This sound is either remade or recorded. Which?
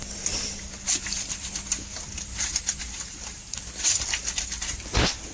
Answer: recorded